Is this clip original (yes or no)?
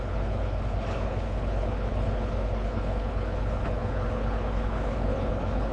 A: no